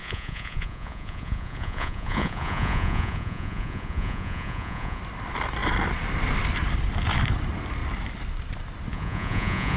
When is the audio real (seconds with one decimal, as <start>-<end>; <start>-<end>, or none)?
5.0-8.9